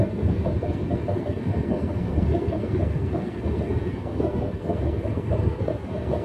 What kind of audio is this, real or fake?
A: fake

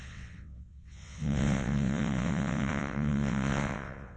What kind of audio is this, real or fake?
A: fake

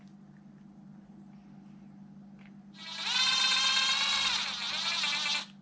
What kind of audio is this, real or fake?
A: real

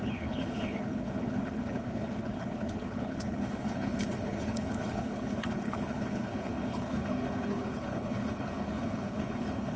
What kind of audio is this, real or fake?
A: fake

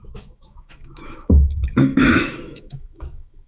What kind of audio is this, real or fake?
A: fake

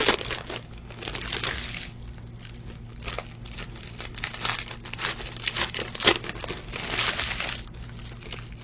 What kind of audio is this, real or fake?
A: real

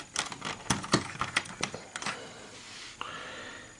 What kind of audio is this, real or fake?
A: real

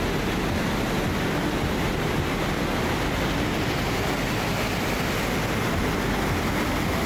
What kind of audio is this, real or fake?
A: real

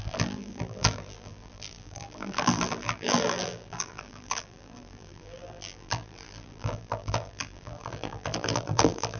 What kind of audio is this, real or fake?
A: fake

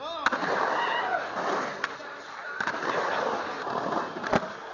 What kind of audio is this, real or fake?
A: real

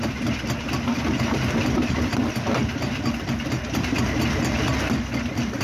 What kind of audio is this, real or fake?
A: real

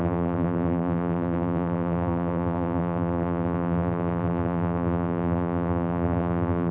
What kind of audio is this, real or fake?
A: fake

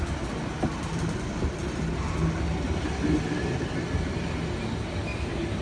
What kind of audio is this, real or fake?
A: real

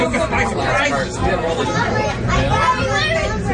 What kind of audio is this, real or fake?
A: real